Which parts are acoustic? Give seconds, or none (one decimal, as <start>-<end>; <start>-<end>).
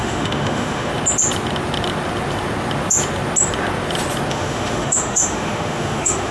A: 0.9-4.3